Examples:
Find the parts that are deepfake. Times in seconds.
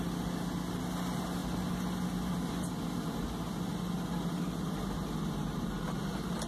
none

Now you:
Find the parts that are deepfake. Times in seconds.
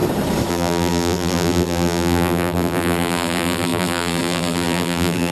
0.5-5.3 (vocoder, BigVGAN v2)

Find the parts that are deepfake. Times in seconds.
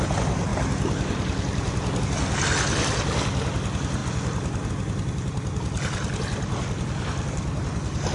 none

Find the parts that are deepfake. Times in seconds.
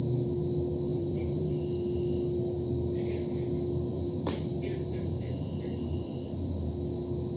0.9-1.5 (vocoder, BigVGAN v2); 3.9-6.5